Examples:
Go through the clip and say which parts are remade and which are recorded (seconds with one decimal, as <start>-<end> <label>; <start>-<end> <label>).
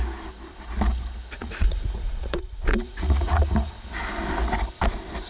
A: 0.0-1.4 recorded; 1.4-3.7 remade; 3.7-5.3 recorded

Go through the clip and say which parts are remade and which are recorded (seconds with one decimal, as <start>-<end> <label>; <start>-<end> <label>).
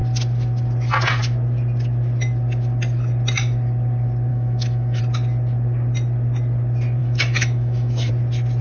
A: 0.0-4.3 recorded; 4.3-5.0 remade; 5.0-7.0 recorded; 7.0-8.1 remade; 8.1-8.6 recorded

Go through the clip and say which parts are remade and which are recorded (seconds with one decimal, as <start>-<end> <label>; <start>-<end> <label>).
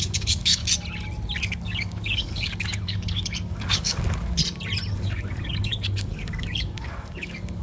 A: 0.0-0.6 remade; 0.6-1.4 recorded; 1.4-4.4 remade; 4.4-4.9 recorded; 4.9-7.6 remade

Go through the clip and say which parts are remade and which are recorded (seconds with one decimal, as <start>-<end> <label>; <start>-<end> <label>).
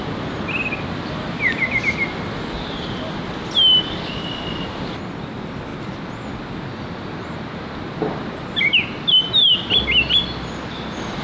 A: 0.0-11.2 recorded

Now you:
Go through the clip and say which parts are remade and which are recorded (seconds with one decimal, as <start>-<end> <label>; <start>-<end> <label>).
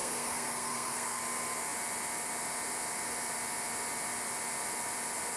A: 0.0-1.2 remade; 1.2-5.4 recorded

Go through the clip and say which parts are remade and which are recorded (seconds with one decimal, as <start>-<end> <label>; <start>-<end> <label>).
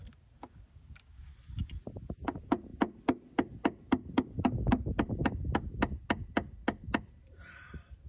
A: 0.0-8.1 recorded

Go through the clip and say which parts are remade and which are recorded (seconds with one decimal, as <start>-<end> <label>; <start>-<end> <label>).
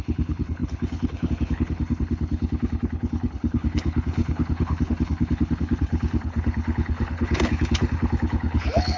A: 0.0-9.0 remade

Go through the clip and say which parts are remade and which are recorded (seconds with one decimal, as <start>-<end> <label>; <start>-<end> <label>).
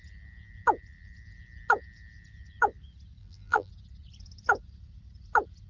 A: 0.0-3.2 recorded; 3.2-3.7 remade; 3.7-5.7 recorded